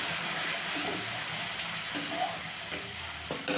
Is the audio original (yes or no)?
no